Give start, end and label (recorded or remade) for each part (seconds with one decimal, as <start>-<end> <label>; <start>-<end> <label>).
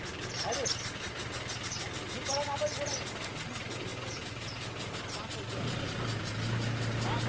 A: 0.0-3.9 recorded; 3.9-4.9 remade; 4.9-7.3 recorded